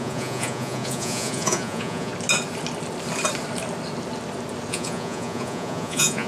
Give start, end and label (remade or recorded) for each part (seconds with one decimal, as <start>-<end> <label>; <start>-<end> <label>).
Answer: 0.0-2.1 remade; 2.1-4.7 recorded; 4.7-6.3 remade